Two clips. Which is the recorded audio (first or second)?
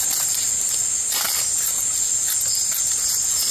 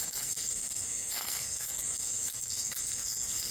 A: first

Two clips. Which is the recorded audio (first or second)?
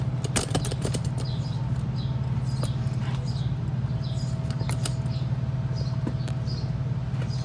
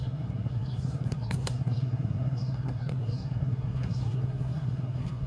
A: first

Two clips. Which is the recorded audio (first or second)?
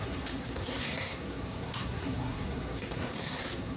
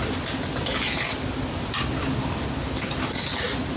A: second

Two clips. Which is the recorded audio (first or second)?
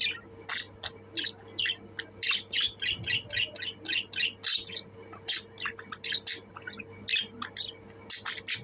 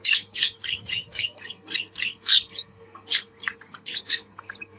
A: first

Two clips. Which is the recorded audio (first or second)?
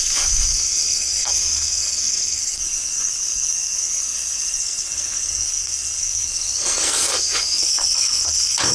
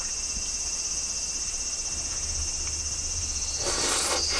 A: second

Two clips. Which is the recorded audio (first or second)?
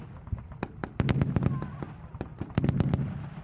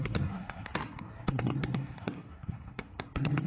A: first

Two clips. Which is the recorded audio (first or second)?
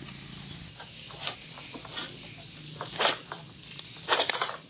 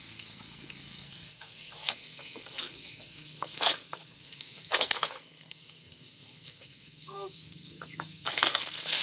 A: first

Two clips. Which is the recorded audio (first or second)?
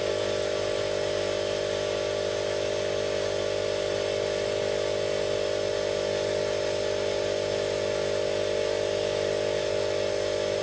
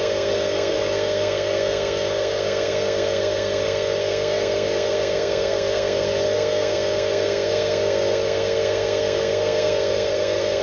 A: first